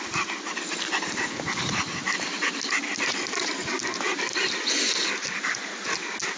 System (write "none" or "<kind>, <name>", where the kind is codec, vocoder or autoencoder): none